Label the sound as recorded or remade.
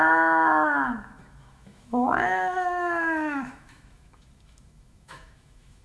remade